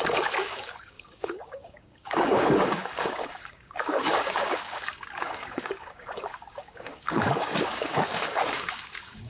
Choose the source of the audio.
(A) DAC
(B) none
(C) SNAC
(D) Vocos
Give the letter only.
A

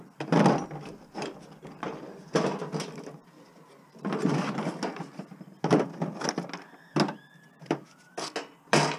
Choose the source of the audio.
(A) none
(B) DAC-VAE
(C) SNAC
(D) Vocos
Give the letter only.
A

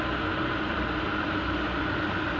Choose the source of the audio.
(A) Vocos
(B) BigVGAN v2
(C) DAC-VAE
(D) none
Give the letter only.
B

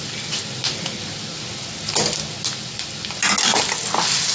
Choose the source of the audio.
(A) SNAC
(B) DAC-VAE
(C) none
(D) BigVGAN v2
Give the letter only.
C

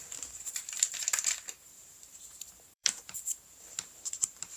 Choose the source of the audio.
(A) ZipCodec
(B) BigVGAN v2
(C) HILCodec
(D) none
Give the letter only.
B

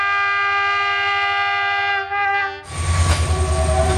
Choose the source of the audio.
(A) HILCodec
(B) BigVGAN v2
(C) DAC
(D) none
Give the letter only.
D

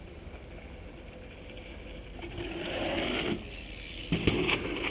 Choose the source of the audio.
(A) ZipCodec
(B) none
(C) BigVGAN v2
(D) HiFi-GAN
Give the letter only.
B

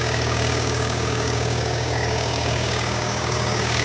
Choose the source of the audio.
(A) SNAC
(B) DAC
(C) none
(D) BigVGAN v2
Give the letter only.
B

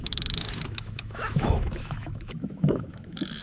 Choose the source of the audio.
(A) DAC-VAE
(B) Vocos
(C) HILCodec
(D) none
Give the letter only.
A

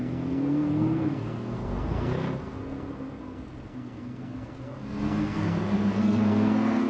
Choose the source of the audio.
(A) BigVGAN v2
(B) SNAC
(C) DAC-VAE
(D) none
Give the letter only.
B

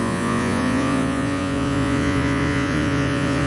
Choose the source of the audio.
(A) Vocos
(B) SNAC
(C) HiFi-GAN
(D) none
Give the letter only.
A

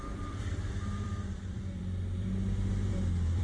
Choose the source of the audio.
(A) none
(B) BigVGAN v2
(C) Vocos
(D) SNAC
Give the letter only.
B